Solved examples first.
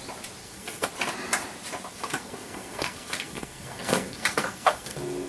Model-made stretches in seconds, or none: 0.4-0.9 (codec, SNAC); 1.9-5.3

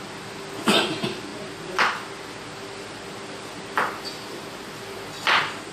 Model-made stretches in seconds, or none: none

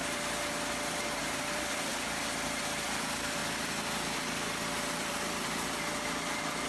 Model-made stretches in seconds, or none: 1.2-6.7 (vocoder, BigVGAN v2)

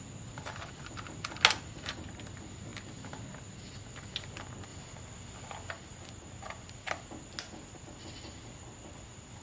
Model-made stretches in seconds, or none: none

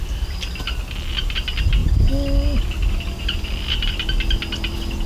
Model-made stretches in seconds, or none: none

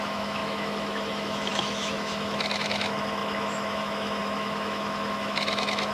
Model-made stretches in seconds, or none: 0.0-5.9 (autoencoder, DAC-VAE)

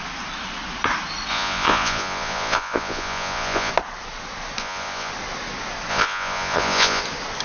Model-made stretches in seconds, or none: 1.3-3.7 (vocoder, Vocos); 4.6-5.1; 5.9-7.0